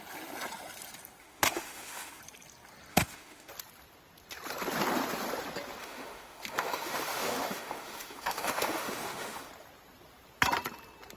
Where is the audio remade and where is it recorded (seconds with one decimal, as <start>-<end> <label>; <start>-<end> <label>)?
0.0-1.2 recorded; 1.2-2.2 remade; 2.2-2.9 recorded; 2.9-3.5 remade; 3.5-5.8 recorded; 5.8-9.5 remade; 9.5-11.2 recorded